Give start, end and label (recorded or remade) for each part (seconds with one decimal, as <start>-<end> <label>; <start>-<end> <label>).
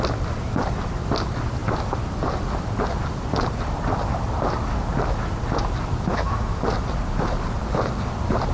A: 0.0-6.1 recorded; 6.1-6.6 remade; 6.6-8.5 recorded